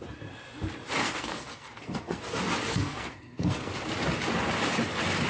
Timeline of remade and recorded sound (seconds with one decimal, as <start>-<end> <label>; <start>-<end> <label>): 0.0-1.0 recorded; 1.0-2.2 remade; 2.2-2.7 recorded; 2.7-3.7 remade; 3.7-5.3 recorded